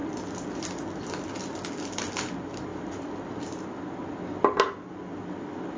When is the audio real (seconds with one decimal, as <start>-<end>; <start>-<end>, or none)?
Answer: 0.0-2.7; 3.4-5.8